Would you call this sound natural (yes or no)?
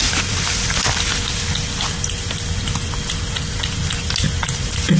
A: yes